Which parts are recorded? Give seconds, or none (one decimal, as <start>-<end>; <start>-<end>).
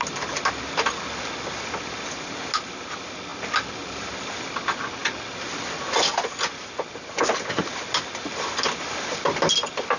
0.0-10.0